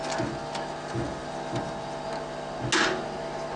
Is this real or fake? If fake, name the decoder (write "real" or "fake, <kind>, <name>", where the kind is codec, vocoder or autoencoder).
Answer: real